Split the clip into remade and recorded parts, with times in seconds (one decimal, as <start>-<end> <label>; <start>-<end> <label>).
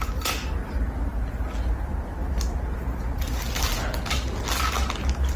0.0-5.4 recorded